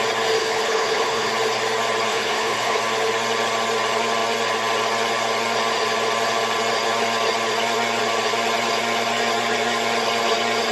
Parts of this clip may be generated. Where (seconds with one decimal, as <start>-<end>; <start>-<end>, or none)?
0.4-1.3; 2.1-2.8